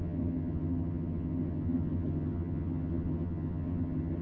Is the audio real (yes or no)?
no